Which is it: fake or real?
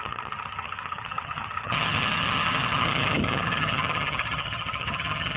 fake